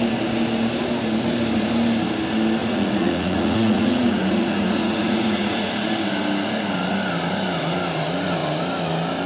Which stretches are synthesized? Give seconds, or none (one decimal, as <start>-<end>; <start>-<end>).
2.6-5.7